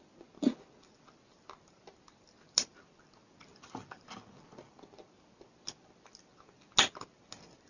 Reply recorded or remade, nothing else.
recorded